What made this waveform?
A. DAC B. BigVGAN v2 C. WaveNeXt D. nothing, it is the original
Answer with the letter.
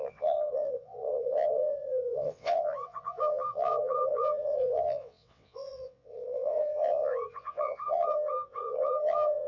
C